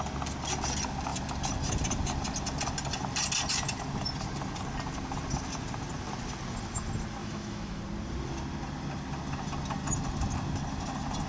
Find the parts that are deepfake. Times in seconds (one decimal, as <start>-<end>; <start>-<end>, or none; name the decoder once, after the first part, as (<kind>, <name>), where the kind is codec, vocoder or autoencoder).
7.2-7.8 (autoencoder, DAC-VAE)